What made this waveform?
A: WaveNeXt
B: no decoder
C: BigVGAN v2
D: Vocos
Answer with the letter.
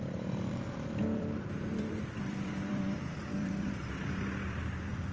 C